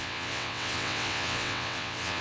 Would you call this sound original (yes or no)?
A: no